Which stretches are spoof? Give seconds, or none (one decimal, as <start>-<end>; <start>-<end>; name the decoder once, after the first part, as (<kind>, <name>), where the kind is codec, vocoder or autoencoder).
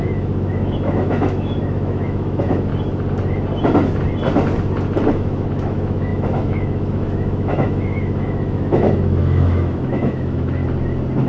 0.0-2.7 (autoencoder, DAC-VAE); 5.1-10.6